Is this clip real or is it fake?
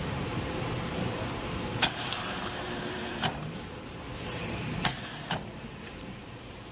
fake